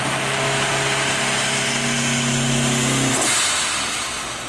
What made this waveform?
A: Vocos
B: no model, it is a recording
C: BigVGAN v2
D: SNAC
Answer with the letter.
B